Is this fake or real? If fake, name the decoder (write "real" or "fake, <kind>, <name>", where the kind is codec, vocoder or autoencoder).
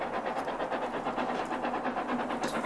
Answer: real